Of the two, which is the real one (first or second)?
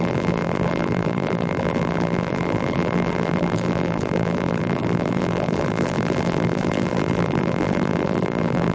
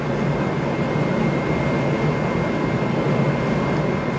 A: second